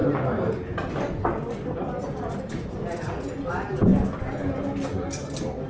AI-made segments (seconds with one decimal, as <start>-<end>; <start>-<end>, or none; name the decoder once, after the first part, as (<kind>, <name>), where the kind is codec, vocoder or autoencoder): none